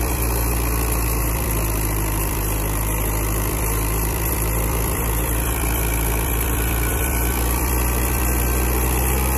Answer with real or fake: fake